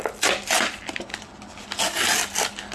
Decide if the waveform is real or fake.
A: real